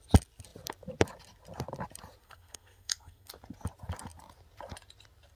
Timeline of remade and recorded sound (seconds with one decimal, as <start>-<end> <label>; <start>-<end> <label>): 0.0-2.2 recorded; 2.2-3.3 remade; 3.3-5.4 recorded